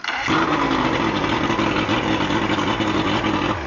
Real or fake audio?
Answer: real